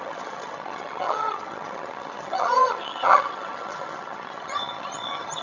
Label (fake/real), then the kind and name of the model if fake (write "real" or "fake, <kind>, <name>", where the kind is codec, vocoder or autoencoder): fake, vocoder, HiFi-GAN